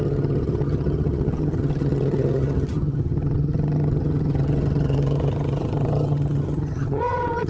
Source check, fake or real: fake